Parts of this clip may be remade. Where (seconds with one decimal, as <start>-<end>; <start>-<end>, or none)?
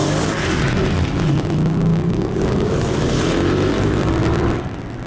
0.0-0.7; 1.9-3.2